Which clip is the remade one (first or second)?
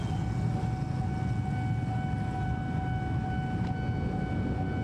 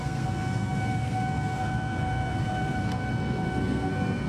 second